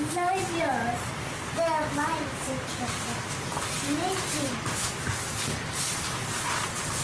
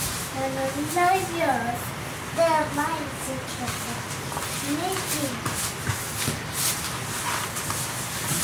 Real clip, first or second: second